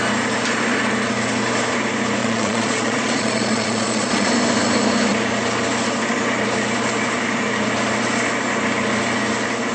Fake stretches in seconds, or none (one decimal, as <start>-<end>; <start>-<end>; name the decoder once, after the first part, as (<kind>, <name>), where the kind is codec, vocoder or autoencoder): 2.2-4.3 (vocoder, Vocos)